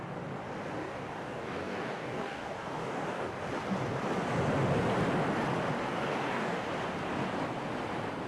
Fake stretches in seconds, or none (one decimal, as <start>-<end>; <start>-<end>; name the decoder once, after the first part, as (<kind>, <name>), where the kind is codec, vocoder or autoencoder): 0.8-3.3 (codec, DAC); 5.9-6.6